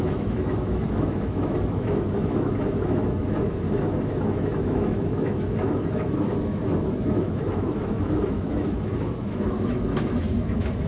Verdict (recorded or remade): remade